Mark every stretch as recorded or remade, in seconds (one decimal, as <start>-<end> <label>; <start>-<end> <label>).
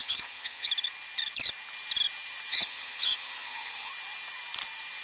0.0-0.7 remade; 0.7-2.5 recorded; 2.5-3.9 remade; 3.9-5.0 recorded